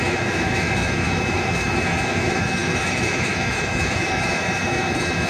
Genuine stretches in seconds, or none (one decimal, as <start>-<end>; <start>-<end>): none